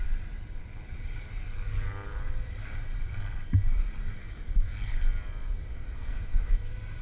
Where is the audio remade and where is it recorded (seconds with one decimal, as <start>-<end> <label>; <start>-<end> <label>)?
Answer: 0.0-4.2 recorded; 4.2-4.7 remade; 4.7-5.7 recorded; 5.7-6.5 remade; 6.5-7.0 recorded